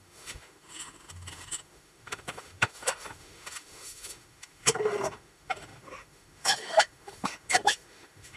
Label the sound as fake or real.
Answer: fake